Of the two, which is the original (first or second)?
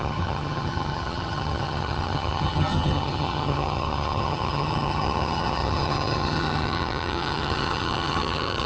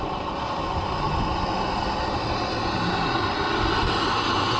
second